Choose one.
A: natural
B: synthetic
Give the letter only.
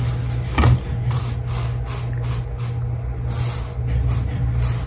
A